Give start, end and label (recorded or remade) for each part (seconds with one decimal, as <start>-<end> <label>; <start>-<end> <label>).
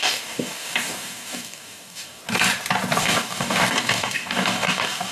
0.0-2.2 remade; 2.2-3.0 recorded; 3.0-5.1 remade